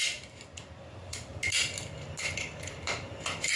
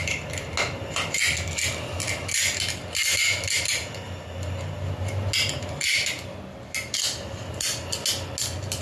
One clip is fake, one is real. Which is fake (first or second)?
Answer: first